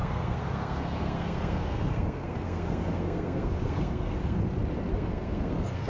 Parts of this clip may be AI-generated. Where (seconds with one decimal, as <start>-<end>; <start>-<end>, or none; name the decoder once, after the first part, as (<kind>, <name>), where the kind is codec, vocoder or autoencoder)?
0.0-4.4 (codec, SNAC); 4.9-5.9